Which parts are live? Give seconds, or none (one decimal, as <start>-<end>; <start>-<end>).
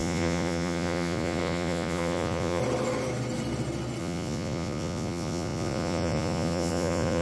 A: 2.6-4.0